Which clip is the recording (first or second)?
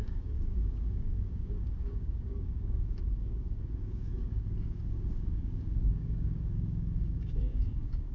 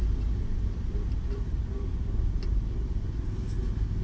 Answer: second